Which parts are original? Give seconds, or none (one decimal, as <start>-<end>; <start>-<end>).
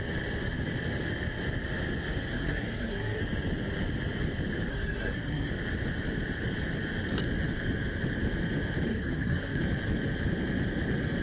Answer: 0.0-2.3; 3.2-4.7; 5.5-8.9; 9.6-11.2